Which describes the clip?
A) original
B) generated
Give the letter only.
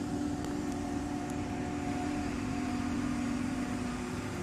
B